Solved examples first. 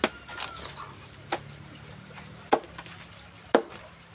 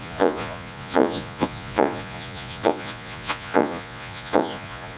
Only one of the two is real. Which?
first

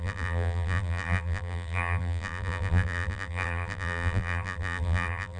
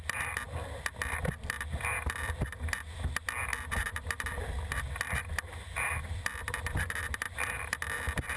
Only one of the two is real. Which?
second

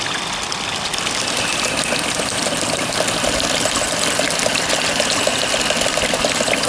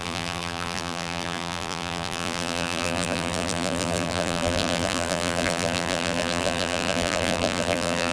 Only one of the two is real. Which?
first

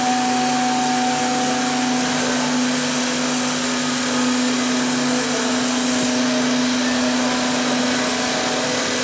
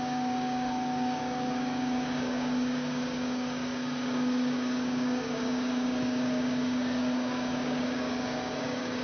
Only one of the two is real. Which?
first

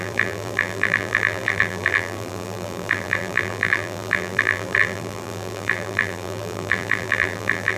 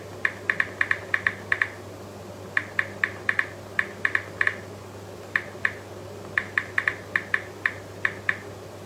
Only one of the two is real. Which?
second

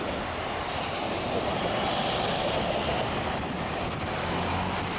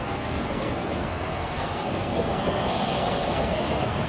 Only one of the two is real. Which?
first